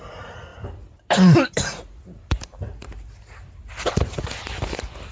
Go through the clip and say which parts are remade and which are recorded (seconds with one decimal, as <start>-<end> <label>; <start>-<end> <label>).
0.0-5.1 remade